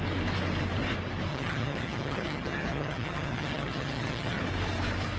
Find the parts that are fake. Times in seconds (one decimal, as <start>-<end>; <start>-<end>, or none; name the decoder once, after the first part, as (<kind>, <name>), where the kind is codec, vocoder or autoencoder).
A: 1.3-4.4 (vocoder, HiFi-GAN)